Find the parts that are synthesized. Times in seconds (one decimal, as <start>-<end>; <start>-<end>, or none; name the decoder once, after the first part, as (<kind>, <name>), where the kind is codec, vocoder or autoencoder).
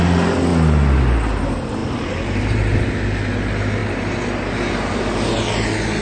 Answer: none